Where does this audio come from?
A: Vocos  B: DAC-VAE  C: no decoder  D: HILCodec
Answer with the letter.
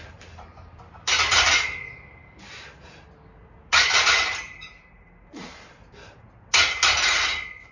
C